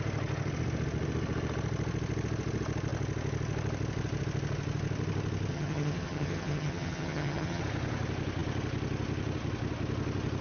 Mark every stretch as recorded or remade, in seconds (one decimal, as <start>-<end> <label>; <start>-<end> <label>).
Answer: 0.0-5.5 recorded; 5.5-7.6 remade; 7.6-10.4 recorded